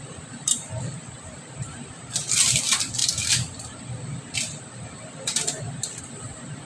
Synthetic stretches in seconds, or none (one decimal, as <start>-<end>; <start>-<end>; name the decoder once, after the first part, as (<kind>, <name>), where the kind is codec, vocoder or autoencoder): 0.0-6.7 (vocoder, BigVGAN v2)

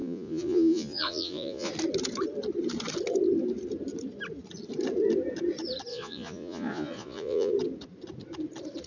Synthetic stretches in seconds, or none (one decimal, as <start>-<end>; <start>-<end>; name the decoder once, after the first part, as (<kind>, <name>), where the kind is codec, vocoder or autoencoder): 0.0-1.7 (vocoder, Vocos); 5.9-7.5